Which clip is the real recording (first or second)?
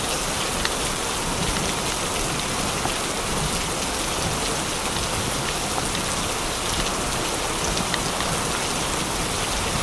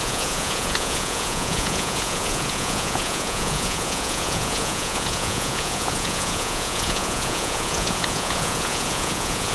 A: first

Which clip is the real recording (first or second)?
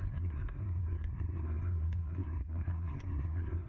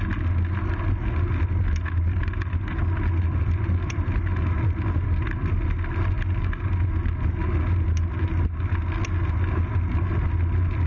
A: second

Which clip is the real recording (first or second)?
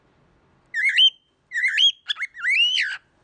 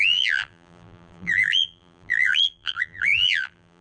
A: first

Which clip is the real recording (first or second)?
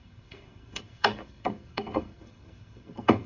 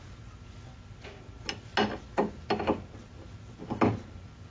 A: second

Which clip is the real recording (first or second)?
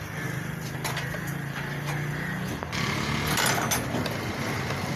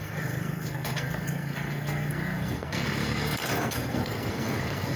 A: first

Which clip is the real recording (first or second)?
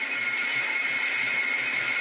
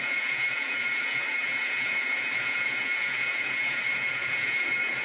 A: first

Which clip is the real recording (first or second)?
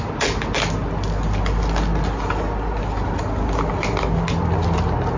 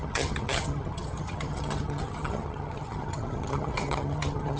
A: first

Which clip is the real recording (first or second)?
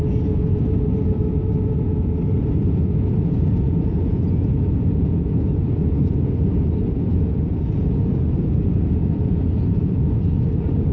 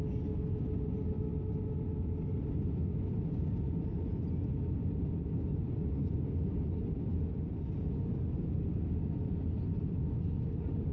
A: second